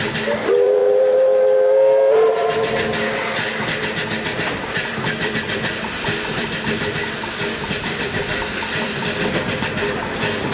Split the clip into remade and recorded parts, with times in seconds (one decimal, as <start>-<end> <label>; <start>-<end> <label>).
0.0-0.8 remade; 0.8-4.5 recorded; 4.5-10.5 remade